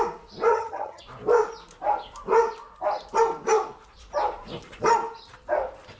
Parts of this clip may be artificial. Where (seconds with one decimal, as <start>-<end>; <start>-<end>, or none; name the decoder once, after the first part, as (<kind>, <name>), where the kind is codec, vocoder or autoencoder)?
0.5-1.0 (vocoder, HiFi-GAN)